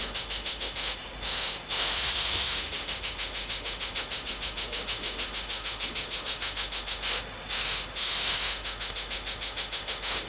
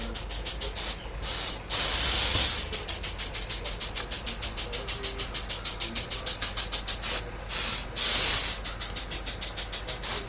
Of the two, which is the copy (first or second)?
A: first